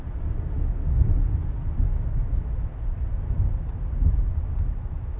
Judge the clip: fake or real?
real